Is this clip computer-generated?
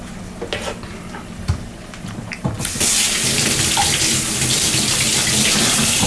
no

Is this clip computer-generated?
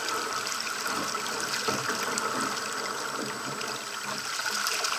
no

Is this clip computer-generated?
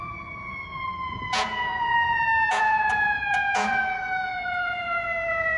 yes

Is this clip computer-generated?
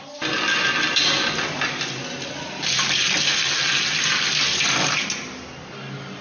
no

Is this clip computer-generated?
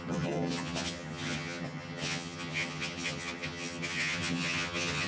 yes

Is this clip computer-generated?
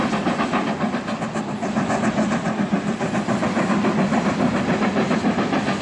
no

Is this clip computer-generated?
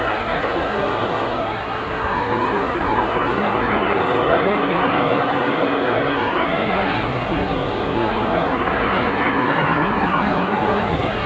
yes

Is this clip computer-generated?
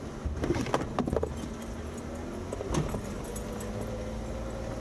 no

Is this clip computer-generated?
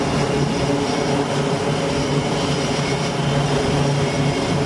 no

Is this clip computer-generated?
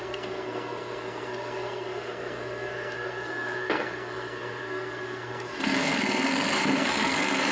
yes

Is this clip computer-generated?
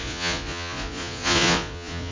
yes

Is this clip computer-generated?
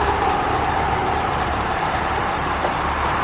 yes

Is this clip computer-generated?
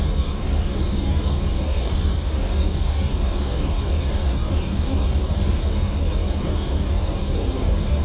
yes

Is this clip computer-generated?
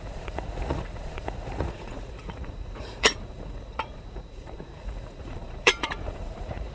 yes